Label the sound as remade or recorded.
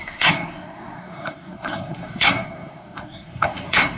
remade